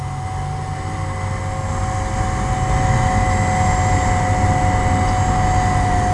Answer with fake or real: real